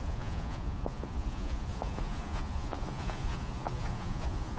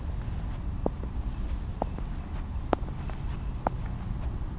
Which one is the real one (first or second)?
second